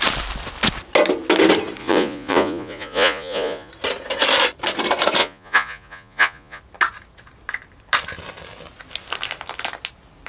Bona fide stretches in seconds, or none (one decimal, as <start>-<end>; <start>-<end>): 0.0-1.8; 3.7-5.2; 6.6-10.3